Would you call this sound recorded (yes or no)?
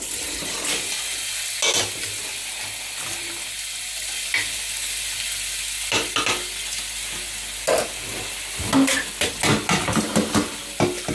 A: yes